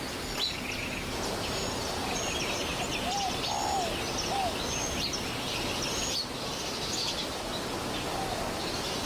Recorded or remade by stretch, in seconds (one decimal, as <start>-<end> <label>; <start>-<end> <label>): 0.0-2.7 remade; 2.7-6.3 recorded; 6.3-9.1 remade